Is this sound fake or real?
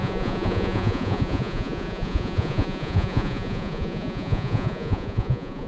fake